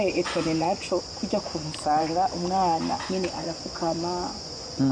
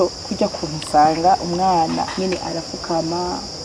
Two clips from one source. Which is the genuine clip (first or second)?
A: second